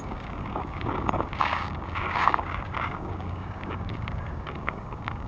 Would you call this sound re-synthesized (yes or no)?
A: yes